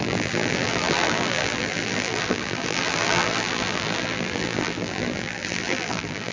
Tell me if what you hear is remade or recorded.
remade